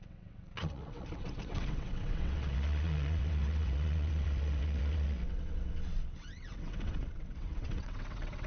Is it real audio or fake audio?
fake